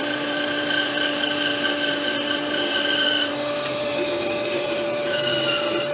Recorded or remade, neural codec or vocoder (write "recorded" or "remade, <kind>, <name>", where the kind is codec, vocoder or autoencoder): remade, vocoder, BigVGAN v2